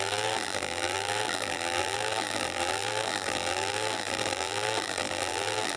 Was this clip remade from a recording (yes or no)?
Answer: yes